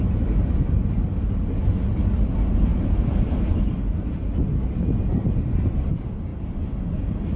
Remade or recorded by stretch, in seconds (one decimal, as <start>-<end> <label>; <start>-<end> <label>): 0.0-7.4 recorded